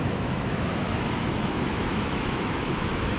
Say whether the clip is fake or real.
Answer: fake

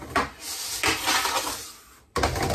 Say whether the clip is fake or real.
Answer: real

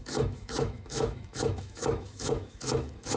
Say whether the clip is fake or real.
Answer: fake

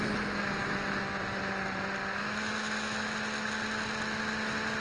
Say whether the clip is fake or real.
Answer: real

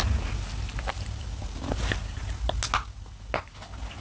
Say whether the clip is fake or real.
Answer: real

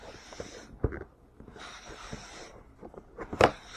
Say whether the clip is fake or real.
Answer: real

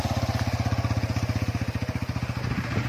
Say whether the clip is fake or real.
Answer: real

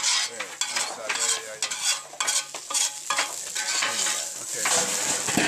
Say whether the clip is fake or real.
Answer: real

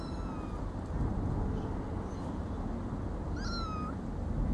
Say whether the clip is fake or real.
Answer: real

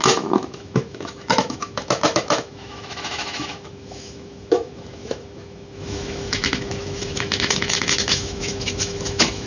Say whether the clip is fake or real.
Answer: fake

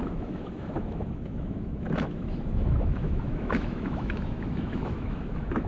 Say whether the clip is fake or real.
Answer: fake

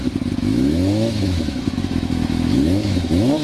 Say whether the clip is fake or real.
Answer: fake